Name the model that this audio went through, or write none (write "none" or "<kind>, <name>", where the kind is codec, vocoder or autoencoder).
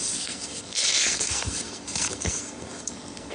codec, SNAC